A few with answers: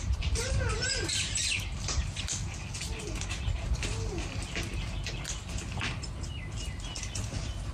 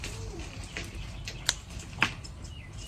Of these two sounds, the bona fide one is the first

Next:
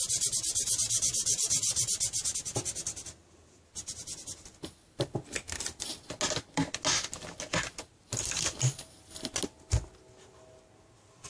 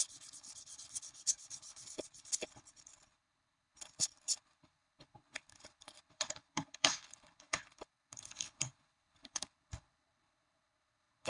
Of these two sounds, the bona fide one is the first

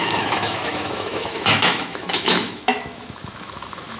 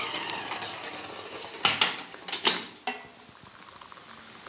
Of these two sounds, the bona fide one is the second